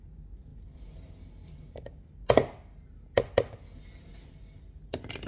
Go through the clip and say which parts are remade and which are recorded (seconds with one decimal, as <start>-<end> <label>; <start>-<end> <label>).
0.0-5.3 recorded